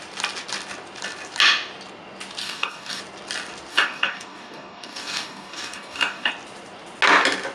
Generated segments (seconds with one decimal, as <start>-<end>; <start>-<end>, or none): 2.4-3.0; 3.7-6.3